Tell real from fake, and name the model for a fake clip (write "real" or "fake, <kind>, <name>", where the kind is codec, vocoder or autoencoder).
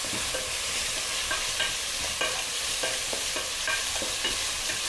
fake, vocoder, BigVGAN v2